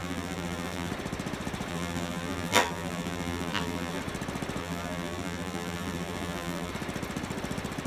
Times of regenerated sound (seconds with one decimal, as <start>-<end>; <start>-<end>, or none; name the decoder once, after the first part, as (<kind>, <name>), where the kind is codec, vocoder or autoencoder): 0.0-0.9 (vocoder, BigVGAN v2); 1.7-4.0; 4.6-6.7